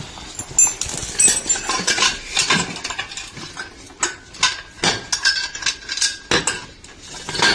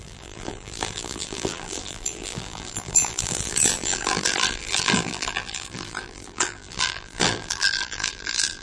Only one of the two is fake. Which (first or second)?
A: second